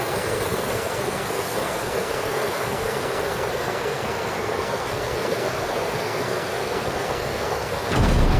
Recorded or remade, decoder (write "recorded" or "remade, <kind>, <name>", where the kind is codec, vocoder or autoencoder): remade, codec, SNAC